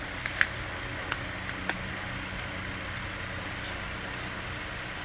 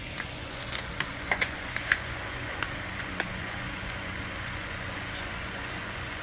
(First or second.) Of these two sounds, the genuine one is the first